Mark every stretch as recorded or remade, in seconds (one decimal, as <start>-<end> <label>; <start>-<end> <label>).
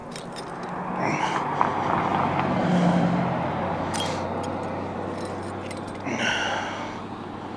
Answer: 0.0-2.1 recorded; 2.1-4.3 remade; 4.3-7.6 recorded